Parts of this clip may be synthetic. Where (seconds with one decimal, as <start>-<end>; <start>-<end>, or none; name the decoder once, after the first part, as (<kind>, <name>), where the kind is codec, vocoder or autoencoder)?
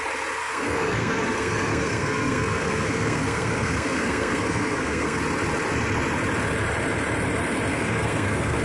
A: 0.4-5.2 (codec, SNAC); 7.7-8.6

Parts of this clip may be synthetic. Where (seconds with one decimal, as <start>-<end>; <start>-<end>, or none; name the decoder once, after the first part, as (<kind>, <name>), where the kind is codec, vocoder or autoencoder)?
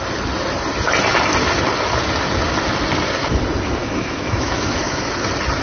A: 3.8-5.1 (autoencoder, DAC-VAE)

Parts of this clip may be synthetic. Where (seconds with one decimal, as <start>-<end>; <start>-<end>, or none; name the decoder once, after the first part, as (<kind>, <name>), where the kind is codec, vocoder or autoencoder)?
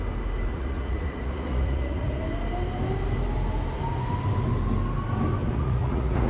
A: 0.5-2.2 (vocoder, Vocos); 5.4-6.3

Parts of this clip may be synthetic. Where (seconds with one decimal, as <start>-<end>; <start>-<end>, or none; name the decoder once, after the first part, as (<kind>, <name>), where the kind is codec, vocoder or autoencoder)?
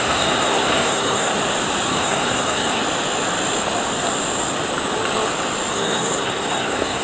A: 0.0-1.3 (codec, SNAC); 1.9-2.8; 5.7-7.0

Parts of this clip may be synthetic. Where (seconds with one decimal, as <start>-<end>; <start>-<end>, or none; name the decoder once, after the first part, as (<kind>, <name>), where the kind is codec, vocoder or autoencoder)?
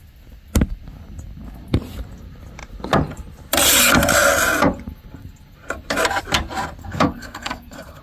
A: 6.8-8.0 (codec, SNAC)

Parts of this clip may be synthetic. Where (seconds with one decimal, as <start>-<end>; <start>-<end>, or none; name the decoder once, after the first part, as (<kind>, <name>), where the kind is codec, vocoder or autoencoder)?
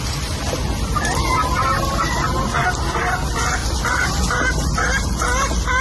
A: none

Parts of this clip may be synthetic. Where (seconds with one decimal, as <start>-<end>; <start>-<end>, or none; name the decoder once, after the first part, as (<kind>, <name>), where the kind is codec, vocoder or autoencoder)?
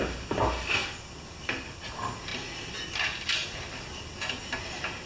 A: 0.8-1.9 (vocoder, BigVGAN v2); 2.3-4.3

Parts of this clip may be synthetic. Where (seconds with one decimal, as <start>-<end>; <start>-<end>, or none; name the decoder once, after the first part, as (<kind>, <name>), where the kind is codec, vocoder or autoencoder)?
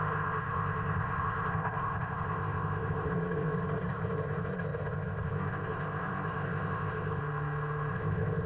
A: 0.0-7.2 (codec, ZipCodec); 7.9-8.5